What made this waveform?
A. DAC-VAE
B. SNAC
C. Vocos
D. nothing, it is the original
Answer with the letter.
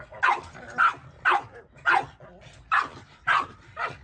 D